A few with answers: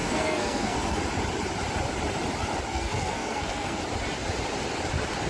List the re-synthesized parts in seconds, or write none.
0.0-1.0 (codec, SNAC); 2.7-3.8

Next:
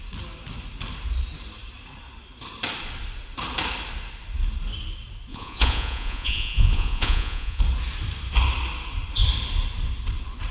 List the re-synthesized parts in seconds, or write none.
5.3-7.6 (vocoder, Vocos)

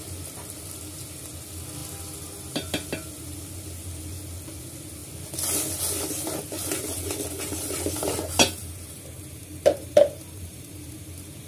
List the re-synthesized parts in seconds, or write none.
8.6-11.5 (vocoder, BigVGAN v2)

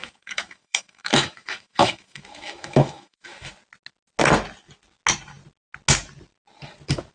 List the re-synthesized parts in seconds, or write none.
0.0-3.5 (autoencoder, DAC-VAE)

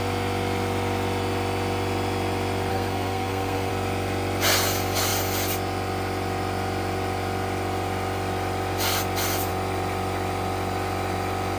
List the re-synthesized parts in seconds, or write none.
2.7-3.7 (codec, SNAC)

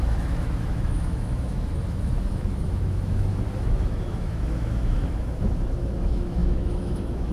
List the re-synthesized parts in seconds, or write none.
0.0-7.3 (autoencoder, DAC-VAE)

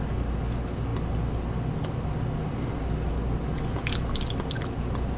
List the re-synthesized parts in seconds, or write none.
none

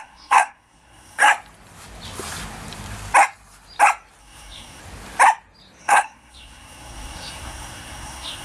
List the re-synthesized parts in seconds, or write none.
0.0-1.2 (codec, SNAC); 4.2-4.8; 5.8-8.4